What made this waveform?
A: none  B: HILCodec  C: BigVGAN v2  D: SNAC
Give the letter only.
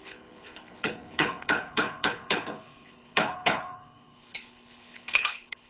B